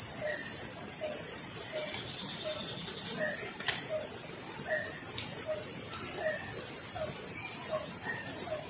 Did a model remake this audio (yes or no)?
no